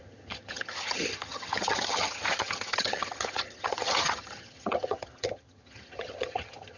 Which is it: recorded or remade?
remade